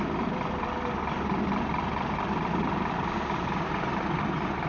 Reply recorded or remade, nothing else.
recorded